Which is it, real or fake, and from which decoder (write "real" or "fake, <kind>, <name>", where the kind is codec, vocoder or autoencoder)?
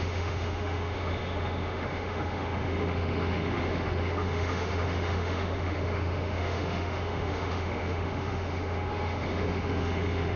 fake, autoencoder, DAC-VAE